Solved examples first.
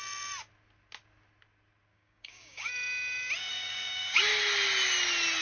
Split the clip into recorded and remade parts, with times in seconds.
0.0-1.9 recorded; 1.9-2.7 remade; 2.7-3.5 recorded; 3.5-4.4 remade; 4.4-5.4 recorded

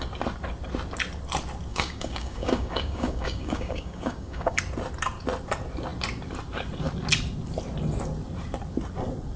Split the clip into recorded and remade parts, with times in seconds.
0.0-1.7 recorded; 1.7-4.6 remade; 4.6-9.4 recorded

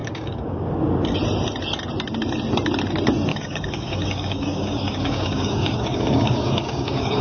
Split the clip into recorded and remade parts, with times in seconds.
0.0-0.7 remade; 0.7-3.3 recorded; 3.3-7.2 remade

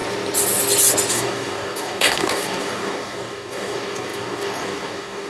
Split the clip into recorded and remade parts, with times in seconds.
0.0-1.1 recorded; 1.1-5.3 remade

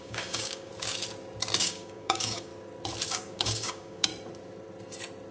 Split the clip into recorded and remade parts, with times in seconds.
0.0-0.7 remade; 0.7-1.6 recorded; 1.6-2.5 remade; 2.5-3.1 recorded; 3.1-4.1 remade; 4.1-5.3 recorded